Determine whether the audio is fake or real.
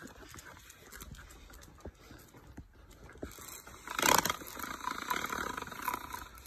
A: real